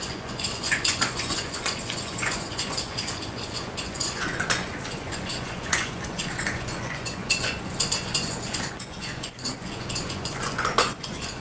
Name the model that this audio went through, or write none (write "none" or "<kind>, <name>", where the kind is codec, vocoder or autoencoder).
vocoder, Vocos